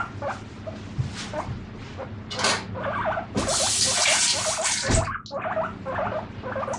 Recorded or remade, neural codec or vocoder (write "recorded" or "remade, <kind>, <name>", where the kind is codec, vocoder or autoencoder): recorded